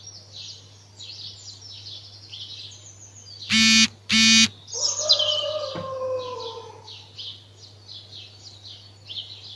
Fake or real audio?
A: real